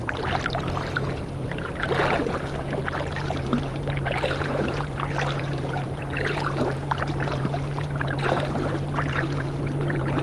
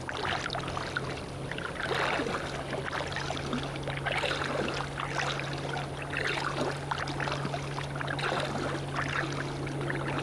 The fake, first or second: first